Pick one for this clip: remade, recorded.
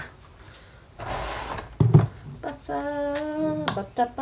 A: recorded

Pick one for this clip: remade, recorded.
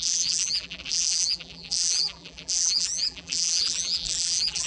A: remade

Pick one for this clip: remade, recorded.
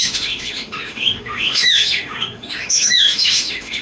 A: remade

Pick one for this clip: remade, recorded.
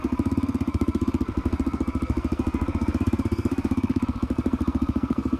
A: remade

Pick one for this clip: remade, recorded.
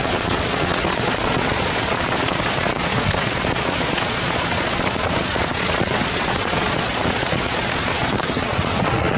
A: remade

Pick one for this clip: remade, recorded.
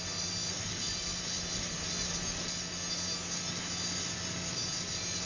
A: recorded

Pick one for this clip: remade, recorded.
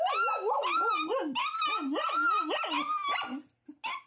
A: recorded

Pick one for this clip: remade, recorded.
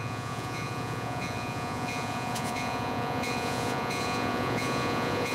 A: remade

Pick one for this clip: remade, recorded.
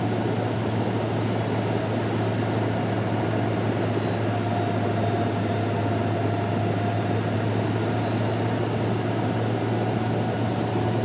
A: recorded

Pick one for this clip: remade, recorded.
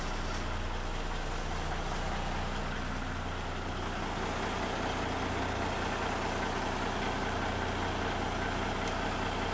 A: recorded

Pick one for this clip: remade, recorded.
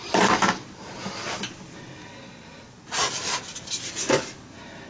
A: recorded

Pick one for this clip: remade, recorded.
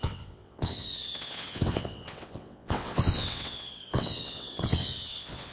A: remade